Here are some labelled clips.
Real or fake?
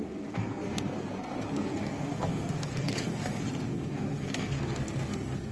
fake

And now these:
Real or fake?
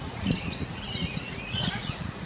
fake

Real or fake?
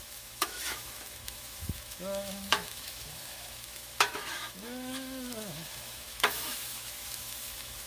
fake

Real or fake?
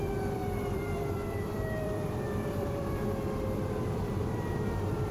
fake